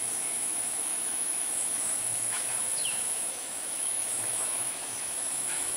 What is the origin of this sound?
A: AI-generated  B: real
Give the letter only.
A